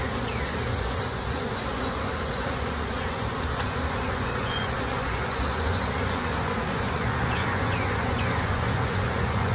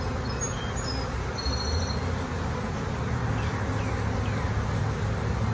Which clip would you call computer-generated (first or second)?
first